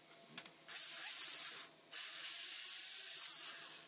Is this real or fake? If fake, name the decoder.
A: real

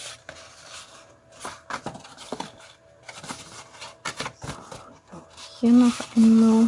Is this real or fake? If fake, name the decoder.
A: real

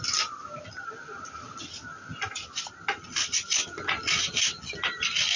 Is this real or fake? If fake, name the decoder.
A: real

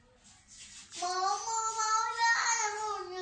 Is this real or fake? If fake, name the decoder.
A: real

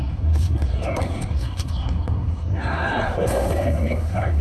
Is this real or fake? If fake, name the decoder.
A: fake, codec, SNAC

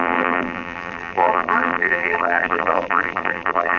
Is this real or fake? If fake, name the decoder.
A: fake, vocoder, BigVGAN v2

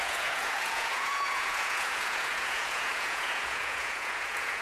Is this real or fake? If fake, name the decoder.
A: fake, vocoder, Vocos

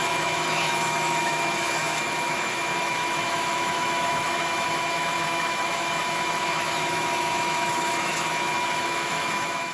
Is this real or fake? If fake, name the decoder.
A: fake, autoencoder, DAC-VAE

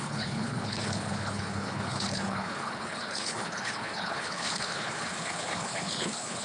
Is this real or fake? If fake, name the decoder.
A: fake, codec, HILCodec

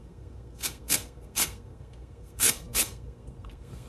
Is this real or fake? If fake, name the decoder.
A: fake, codec, SNAC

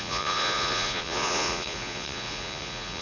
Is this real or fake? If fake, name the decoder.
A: fake, vocoder, Vocos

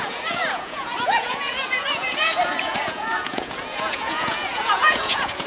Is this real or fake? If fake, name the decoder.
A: fake, vocoder, Vocos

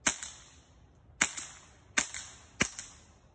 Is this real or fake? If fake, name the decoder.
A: real